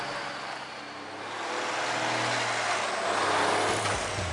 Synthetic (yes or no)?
no